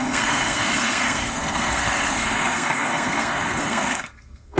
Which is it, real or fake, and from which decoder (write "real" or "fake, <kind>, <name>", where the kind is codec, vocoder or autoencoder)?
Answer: fake, codec, SNAC